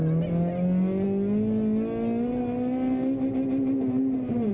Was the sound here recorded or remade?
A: recorded